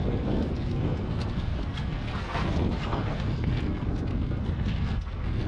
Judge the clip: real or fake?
fake